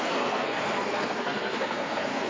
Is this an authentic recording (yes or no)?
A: no